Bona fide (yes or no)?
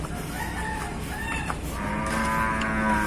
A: yes